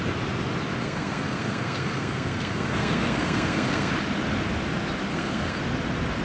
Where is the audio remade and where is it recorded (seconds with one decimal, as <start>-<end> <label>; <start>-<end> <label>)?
0.0-0.8 recorded; 0.8-3.9 remade; 3.9-5.1 recorded; 5.1-5.6 remade; 5.6-6.2 recorded